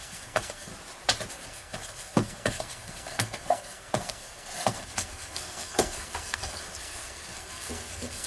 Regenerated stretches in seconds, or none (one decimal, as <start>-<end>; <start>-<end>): 0.0-0.7; 1.3-8.3

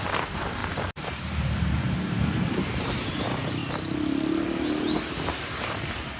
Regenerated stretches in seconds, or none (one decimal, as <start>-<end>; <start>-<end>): 0.0-3.6; 5.0-6.2